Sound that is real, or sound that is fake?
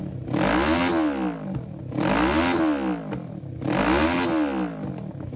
real